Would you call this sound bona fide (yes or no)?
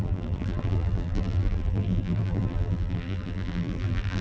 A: no